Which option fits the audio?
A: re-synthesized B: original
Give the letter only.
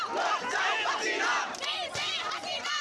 B